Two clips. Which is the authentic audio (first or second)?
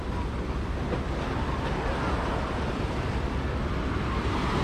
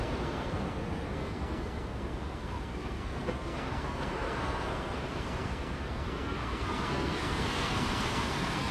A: first